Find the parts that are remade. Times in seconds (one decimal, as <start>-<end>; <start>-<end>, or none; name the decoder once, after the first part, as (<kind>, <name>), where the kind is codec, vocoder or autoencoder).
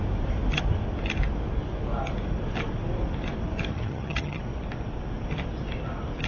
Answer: 3.7-4.4 (vocoder, HiFi-GAN)